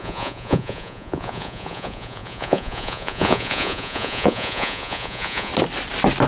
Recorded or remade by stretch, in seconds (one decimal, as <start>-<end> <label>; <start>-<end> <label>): 0.0-5.5 remade; 5.5-6.3 recorded

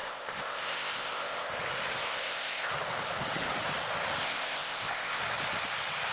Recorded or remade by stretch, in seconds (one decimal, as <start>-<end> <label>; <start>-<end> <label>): 0.0-1.5 remade; 1.5-2.0 recorded; 2.0-2.7 remade; 2.7-4.2 recorded; 4.2-5.2 remade; 5.2-6.1 recorded

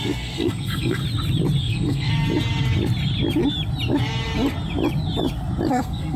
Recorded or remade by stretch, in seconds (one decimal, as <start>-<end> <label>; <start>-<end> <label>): 0.0-1.0 remade; 1.0-1.6 recorded; 1.6-2.1 remade; 2.1-5.7 recorded; 5.7-6.2 remade

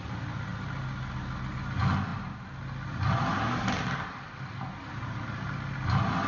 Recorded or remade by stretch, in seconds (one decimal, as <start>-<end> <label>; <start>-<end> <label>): 0.0-6.3 recorded

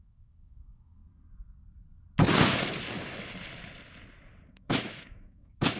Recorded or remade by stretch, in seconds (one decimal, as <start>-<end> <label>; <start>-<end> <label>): 0.0-1.0 remade; 1.0-4.5 recorded; 4.5-5.8 remade

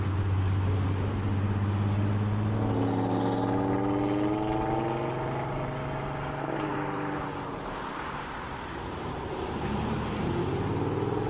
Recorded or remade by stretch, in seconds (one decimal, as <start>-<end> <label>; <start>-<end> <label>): 0.0-6.7 recorded; 6.7-10.4 remade; 10.4-11.3 recorded

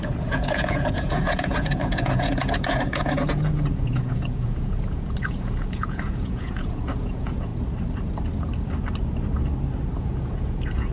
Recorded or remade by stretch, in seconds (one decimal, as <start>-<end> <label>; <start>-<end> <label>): 0.0-7.5 remade; 7.5-10.0 recorded; 10.0-10.9 remade

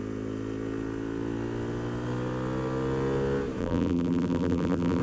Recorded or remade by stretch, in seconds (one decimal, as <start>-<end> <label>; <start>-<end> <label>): 0.0-3.6 recorded; 3.6-5.0 remade